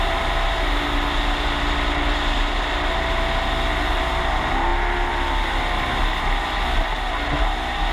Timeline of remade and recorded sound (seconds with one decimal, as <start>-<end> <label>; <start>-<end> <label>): 0.0-7.9 recorded